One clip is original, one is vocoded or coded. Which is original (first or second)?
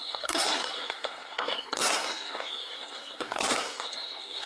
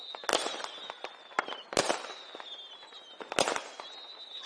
second